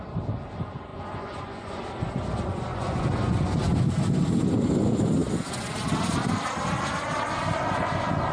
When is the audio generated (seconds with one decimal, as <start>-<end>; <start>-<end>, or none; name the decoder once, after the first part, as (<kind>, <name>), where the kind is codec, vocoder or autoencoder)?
0.9-1.8 (vocoder, Vocos); 2.7-3.6